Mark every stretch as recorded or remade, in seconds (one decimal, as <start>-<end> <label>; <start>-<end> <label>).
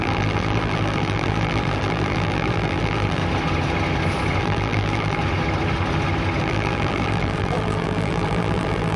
0.0-3.2 remade; 3.2-4.4 recorded; 4.4-5.2 remade; 5.2-6.4 recorded; 6.4-9.0 remade